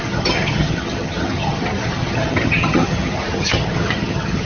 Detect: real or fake fake